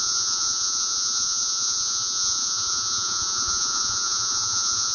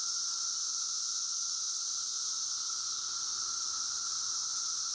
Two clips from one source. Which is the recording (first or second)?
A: second